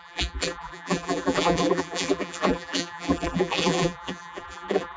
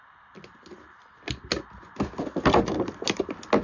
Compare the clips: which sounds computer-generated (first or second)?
first